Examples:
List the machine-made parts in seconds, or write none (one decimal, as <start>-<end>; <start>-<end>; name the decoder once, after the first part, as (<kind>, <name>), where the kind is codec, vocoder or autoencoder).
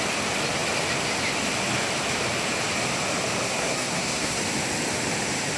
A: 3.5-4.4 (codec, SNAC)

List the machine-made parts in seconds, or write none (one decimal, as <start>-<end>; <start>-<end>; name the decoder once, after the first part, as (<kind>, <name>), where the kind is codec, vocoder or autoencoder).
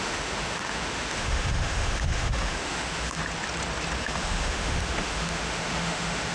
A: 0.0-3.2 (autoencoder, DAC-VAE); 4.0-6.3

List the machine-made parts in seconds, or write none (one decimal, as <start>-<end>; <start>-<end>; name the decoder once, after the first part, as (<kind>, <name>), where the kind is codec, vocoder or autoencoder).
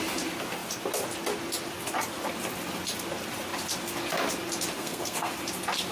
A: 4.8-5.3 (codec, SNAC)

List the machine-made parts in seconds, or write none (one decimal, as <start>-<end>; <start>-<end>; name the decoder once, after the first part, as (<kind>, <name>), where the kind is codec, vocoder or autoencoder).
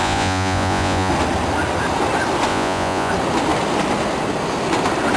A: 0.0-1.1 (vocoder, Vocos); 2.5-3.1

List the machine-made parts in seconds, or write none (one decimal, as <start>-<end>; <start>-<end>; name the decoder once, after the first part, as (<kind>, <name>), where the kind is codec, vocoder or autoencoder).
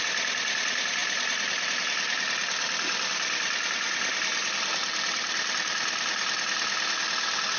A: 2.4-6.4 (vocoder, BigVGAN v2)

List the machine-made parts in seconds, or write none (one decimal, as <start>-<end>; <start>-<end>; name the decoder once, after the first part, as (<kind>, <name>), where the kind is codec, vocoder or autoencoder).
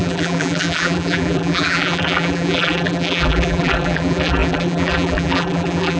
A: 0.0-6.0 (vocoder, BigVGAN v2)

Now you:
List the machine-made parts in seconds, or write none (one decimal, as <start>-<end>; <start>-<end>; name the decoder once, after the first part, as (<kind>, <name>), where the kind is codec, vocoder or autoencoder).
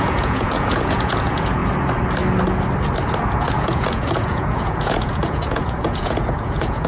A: 0.0-1.6 (vocoder, Vocos); 3.3-6.9